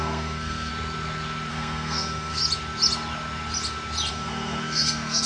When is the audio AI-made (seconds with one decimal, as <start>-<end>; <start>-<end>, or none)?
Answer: 0.0-0.7; 1.5-2.4; 4.1-5.3